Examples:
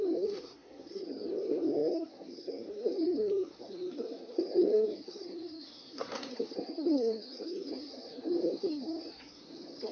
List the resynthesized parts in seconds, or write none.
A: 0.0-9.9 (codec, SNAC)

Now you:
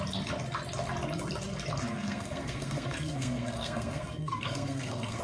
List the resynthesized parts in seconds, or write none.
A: 1.8-5.2 (codec, SNAC)

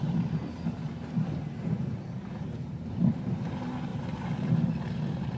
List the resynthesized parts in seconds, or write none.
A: none

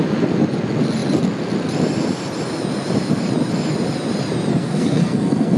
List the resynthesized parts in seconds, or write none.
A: 4.5-5.6 (codec, SNAC)

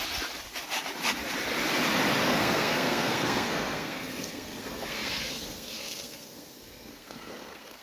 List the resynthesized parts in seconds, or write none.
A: 2.2-7.8 (codec, SNAC)